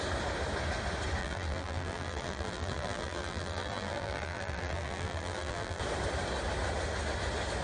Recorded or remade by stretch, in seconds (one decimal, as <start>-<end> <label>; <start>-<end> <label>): 0.0-1.2 recorded; 1.2-5.8 remade; 5.8-7.6 recorded